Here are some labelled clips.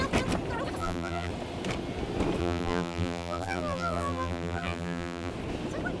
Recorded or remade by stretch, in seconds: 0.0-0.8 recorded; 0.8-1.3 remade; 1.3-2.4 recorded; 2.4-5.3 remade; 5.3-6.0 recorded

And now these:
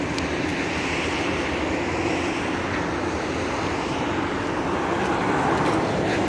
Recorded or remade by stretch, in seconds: 0.0-6.3 recorded

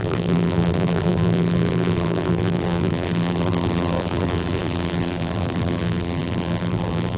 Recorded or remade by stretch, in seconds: 0.0-7.2 remade

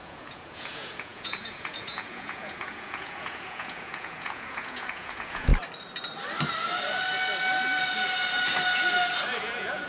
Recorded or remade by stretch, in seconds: 0.0-5.5 remade; 5.5-9.4 recorded; 9.4-9.9 remade

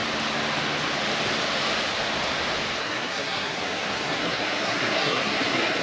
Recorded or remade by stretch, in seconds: 0.0-2.8 recorded; 2.8-5.8 remade

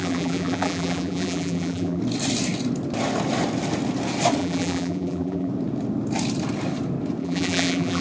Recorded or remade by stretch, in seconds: 0.0-2.0 remade; 2.0-4.4 recorded; 4.4-5.5 remade; 5.5-7.2 recorded; 7.2-8.0 remade

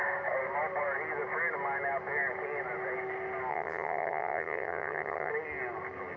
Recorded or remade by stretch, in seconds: 0.0-3.5 recorded; 3.5-5.3 remade; 5.3-6.2 recorded

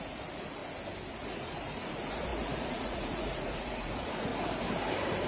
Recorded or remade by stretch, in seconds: 0.0-0.6 remade; 0.6-1.1 recorded; 1.1-4.3 remade; 4.3-5.3 recorded